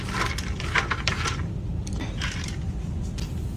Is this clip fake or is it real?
real